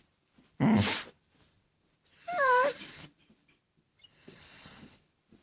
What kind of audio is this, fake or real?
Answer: fake